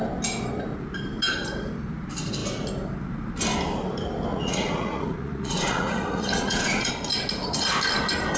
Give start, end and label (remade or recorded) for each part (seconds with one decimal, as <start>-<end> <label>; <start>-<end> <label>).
0.0-4.3 recorded; 4.3-6.9 remade; 6.9-8.4 recorded